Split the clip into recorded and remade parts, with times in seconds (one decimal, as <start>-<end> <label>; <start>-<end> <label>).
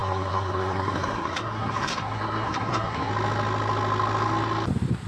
0.0-3.1 remade; 3.1-5.1 recorded